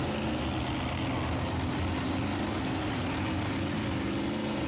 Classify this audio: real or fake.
real